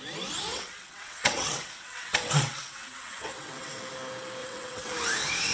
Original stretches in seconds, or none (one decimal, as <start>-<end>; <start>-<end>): 0.0-0.5; 3.8-4.4; 4.9-5.5